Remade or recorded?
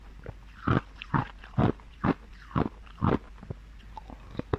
recorded